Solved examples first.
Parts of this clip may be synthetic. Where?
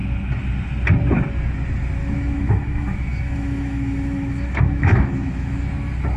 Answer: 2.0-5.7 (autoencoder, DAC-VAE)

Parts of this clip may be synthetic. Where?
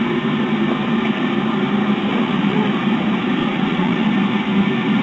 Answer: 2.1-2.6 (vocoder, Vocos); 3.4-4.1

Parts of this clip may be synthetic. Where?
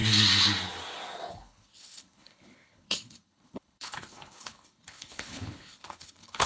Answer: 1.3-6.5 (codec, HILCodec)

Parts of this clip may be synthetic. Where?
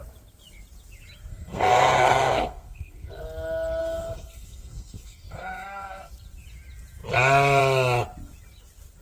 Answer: 1.3-3.1 (codec, SNAC); 3.8-6.1